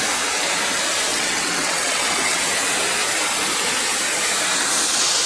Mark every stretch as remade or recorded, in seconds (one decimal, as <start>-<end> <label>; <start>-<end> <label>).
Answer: 0.0-1.1 recorded; 1.1-2.4 remade; 2.4-5.3 recorded